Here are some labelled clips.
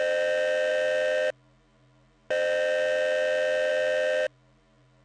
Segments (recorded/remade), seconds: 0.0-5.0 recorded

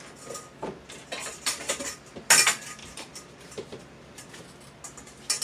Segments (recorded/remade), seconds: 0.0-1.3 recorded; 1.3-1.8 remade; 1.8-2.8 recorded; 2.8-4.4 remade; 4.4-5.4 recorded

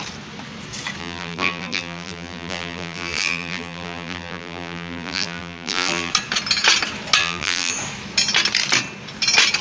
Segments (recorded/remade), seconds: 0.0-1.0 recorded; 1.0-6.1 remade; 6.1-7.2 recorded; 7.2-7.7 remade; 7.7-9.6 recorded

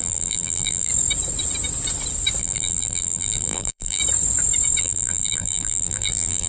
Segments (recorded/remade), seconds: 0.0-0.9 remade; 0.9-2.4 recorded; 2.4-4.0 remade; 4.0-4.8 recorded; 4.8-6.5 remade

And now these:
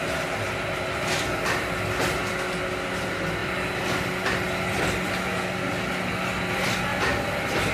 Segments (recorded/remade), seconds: 0.0-3.4 recorded; 3.4-5.1 remade; 5.1-6.9 recorded; 6.9-7.7 remade